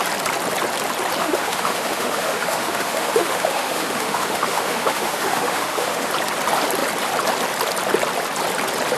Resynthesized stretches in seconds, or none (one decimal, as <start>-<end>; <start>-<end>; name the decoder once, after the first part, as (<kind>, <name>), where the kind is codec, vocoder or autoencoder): 1.2-6.1 (autoencoder, DAC-VAE)